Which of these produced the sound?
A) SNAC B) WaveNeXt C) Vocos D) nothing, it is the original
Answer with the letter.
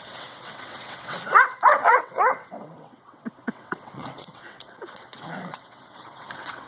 B